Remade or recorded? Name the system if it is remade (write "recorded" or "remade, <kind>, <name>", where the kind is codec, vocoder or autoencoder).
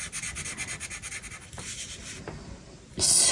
recorded